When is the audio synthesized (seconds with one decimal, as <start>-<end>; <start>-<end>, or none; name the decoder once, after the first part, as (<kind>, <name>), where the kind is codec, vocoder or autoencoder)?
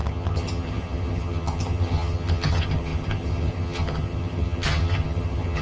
0.0-5.6 (vocoder, HiFi-GAN)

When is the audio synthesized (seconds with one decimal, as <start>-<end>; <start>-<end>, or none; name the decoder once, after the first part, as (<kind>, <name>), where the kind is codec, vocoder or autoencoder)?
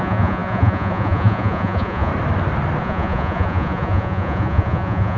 0.0-2.1 (vocoder, Vocos); 2.8-5.2